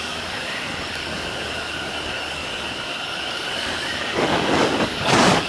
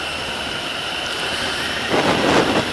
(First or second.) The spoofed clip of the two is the first